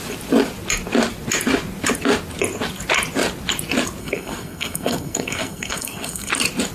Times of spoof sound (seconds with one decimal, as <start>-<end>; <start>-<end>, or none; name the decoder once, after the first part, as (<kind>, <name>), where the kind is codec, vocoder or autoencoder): 4.0-6.3 (codec, SNAC)